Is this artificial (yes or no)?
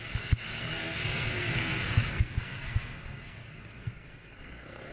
yes